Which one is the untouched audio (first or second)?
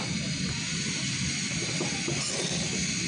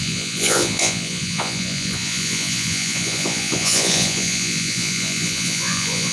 first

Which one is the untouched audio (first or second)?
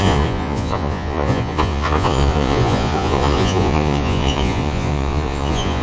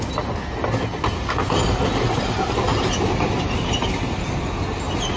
second